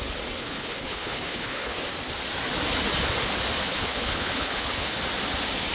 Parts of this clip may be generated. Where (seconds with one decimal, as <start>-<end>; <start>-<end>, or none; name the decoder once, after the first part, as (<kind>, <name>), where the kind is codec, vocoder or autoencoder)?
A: 0.4-1.9 (codec, HILCodec); 3.7-5.0